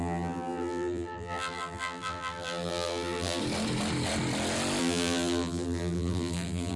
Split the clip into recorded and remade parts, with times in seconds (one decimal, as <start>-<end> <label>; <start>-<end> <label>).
0.0-3.4 remade; 3.4-4.8 recorded; 4.8-6.8 remade